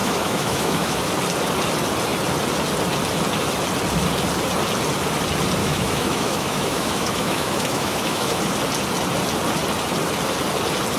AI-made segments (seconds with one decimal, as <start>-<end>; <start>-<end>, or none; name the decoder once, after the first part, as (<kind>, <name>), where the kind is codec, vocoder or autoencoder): 0.0-1.1 (autoencoder, DAC-VAE); 5.6-8.4